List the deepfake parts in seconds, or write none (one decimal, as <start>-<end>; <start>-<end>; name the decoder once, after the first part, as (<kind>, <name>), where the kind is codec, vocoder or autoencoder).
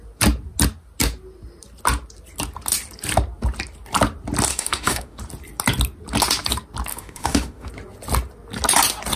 4.5-5.2 (autoencoder, DAC-VAE); 6.9-7.7